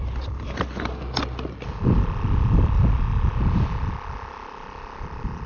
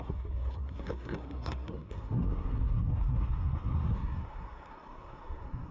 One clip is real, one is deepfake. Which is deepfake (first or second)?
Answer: second